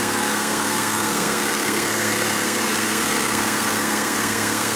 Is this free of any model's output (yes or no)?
no